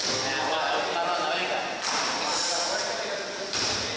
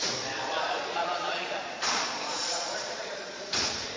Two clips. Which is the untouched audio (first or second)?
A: first